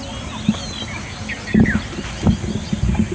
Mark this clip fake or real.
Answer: real